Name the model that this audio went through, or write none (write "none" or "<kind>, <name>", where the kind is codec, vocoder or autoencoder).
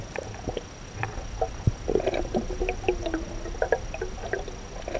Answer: none